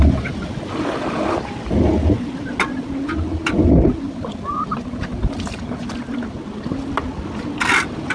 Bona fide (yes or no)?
yes